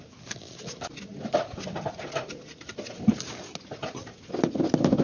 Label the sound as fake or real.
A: real